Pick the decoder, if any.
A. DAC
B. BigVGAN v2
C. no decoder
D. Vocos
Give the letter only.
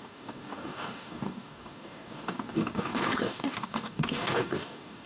A